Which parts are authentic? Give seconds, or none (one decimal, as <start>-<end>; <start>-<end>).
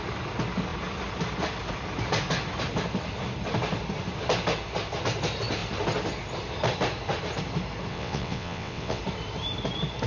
0.0-7.9; 9.0-10.1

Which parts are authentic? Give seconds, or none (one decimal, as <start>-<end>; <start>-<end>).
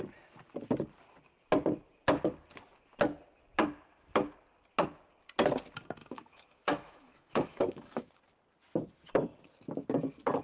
0.0-6.0; 8.1-10.4